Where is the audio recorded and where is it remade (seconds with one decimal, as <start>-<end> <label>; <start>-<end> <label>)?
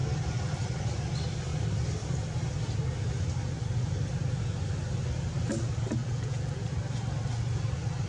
0.0-6.0 recorded; 6.0-6.7 remade; 6.7-8.1 recorded